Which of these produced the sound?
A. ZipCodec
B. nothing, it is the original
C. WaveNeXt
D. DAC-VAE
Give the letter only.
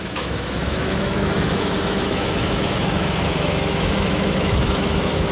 D